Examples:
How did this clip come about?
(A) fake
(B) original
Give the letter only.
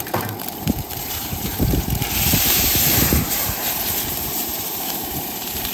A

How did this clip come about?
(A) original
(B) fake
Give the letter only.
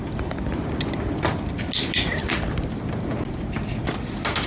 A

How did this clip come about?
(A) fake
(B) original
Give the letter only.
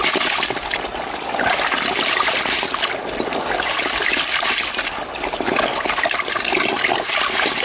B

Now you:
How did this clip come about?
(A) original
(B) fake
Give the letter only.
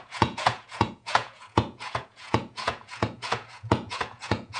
B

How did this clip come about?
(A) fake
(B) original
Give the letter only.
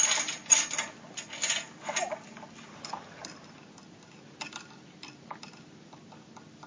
B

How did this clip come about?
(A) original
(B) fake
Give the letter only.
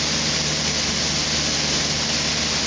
A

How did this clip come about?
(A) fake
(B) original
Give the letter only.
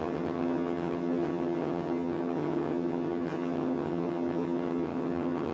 A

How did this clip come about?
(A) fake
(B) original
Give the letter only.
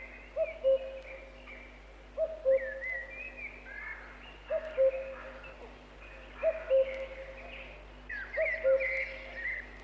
B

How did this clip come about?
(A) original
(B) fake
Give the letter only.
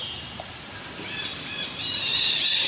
B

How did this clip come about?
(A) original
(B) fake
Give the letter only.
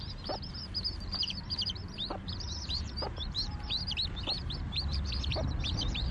B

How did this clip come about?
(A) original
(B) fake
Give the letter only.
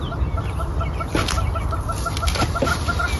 A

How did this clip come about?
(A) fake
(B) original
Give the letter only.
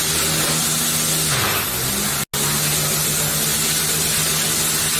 B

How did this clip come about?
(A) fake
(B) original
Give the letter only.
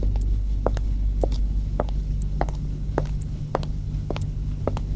A